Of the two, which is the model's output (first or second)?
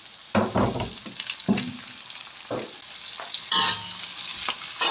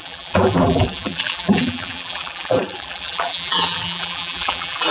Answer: second